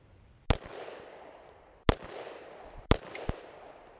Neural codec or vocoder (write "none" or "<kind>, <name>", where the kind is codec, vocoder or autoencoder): none